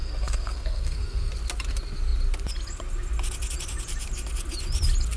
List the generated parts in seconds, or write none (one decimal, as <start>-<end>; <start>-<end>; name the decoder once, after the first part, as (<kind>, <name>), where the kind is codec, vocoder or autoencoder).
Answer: 0.0-1.3 (codec, SNAC)